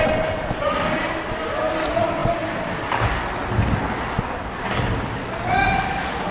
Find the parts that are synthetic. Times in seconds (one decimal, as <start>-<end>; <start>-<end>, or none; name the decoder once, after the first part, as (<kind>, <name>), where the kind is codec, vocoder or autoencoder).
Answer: none